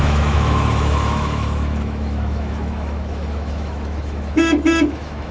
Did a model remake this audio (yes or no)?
yes